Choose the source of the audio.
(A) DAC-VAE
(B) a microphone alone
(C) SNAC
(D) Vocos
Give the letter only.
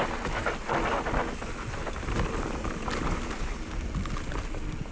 B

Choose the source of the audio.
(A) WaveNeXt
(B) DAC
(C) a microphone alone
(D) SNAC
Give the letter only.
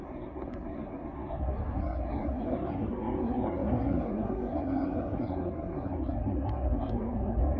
D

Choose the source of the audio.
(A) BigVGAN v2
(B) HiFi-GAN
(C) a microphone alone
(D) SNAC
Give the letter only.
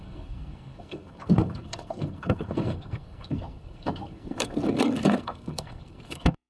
D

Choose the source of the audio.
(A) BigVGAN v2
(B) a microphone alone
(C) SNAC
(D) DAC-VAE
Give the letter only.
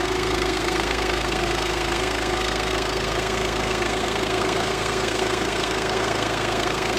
C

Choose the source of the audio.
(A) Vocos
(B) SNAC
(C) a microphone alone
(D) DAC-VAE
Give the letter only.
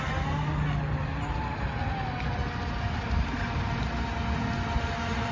C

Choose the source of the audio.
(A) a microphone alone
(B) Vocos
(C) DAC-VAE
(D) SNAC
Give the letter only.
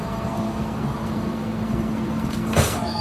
D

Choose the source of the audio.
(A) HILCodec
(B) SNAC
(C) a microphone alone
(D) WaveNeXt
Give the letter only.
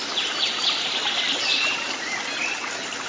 C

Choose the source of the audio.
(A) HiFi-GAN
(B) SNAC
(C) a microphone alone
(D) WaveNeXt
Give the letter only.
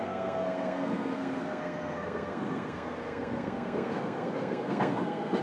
B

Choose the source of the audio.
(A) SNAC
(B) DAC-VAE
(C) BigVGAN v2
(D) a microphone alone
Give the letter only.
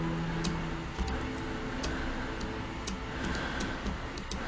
D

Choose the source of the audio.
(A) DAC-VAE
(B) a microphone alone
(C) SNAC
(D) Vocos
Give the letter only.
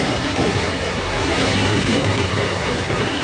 C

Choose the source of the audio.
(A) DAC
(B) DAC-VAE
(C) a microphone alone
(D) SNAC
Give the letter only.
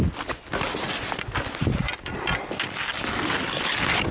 C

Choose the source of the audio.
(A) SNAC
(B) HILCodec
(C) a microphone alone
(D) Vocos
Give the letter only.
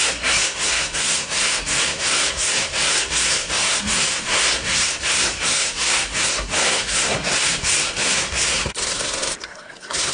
A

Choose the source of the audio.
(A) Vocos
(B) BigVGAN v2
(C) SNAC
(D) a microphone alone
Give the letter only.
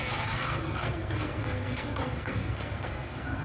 C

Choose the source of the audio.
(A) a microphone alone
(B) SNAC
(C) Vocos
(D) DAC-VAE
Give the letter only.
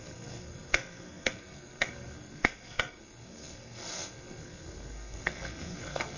B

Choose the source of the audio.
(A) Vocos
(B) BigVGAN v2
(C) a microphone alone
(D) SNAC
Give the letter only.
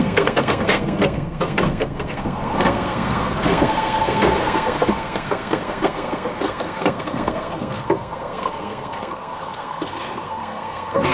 D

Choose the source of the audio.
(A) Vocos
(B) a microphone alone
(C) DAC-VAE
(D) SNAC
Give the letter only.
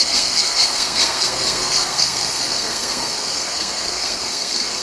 D